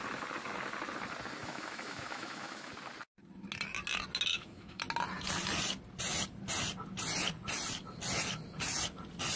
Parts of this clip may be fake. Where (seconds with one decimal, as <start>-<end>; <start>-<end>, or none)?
1.4-2.7; 4.3-4.8

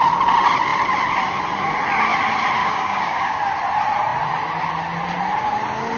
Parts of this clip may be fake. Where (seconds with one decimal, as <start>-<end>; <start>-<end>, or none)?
2.6-3.4